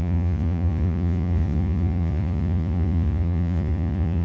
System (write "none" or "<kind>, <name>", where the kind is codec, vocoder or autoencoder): vocoder, Vocos